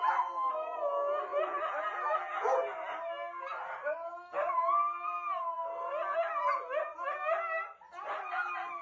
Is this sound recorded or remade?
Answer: recorded